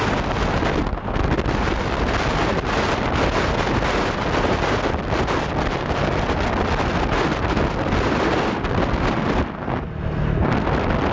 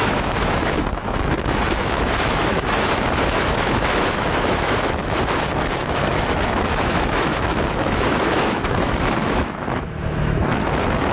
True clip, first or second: first